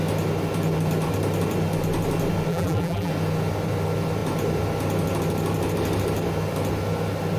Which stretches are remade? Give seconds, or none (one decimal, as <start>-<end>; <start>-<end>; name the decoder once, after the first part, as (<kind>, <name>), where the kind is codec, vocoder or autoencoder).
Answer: 2.5-3.1 (vocoder, BigVGAN v2)

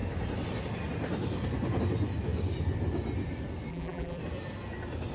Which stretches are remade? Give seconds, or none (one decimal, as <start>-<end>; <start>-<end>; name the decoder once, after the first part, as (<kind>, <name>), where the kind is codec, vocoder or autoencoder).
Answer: 3.7-4.2 (vocoder, BigVGAN v2)

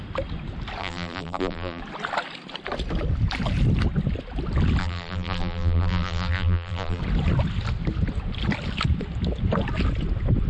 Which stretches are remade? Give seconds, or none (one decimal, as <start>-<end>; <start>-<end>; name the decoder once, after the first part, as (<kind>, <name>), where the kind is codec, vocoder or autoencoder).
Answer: 0.8-1.8 (vocoder, BigVGAN v2); 4.8-7.0

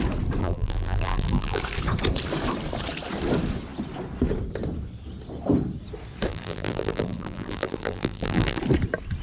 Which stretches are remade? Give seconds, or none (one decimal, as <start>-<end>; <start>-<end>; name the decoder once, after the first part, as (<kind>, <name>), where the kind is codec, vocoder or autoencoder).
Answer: 0.4-1.6 (vocoder, BigVGAN v2); 6.3-8.6